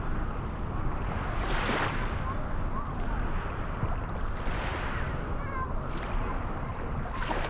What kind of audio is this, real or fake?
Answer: real